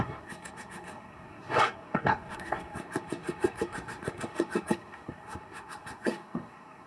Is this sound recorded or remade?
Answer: remade